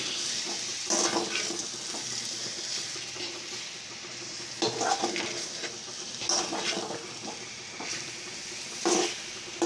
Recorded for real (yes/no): yes